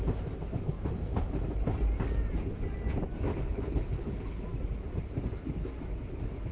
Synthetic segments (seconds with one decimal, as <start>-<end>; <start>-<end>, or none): 3.3-4.4